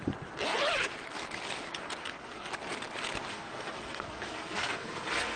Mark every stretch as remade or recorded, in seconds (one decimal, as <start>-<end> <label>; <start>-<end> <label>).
0.0-2.0 recorded; 2.0-2.5 remade; 2.5-3.3 recorded; 3.3-5.4 remade